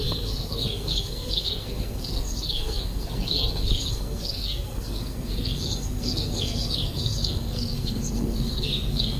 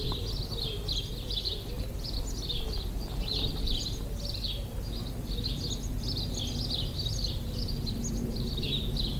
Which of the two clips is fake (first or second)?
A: first